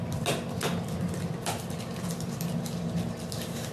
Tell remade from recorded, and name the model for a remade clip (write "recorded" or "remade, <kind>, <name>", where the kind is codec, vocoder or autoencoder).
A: recorded